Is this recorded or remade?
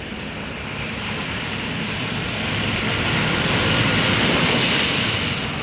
recorded